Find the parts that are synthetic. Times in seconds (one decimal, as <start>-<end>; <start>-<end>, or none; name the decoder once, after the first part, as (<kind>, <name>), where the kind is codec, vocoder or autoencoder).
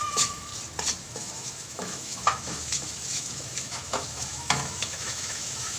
0.0-0.5 (autoencoder, DAC-VAE); 1.0-5.8